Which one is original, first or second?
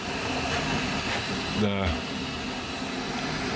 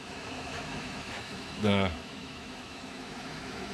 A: first